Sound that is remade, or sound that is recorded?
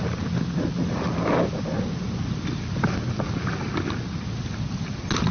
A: recorded